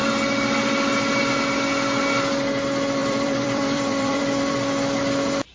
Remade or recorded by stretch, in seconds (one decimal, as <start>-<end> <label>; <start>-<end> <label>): 0.0-3.0 recorded; 3.0-4.2 remade; 4.2-5.5 recorded